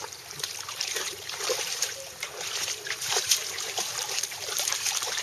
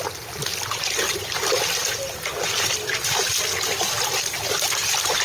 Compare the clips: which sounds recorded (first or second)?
second